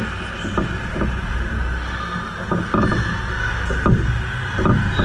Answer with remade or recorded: recorded